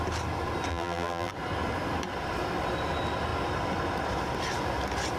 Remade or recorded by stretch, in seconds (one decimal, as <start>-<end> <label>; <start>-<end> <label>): 0.0-0.7 recorded; 0.7-1.3 remade; 1.3-5.2 recorded